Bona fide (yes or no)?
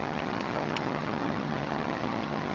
no